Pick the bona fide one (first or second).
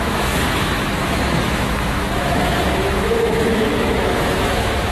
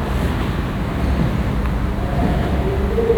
second